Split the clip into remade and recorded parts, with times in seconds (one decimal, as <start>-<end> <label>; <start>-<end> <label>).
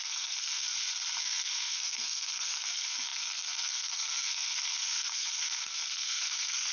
0.0-0.7 remade; 0.7-1.2 recorded; 1.2-6.7 remade